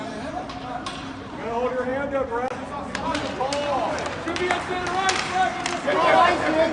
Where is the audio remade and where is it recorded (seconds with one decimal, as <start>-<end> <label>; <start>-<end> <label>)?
0.0-6.7 recorded